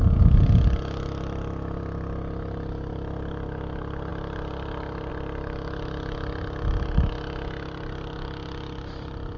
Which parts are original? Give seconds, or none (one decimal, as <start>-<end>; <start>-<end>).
0.0-9.4